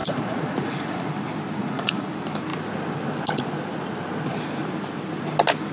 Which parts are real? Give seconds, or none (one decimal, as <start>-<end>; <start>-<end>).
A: 1.1-1.6; 2.1-5.7